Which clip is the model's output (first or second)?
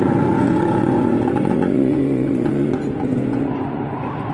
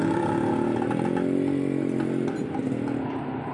first